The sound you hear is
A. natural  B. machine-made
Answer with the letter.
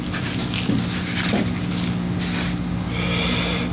A